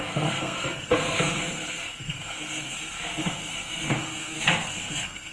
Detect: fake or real fake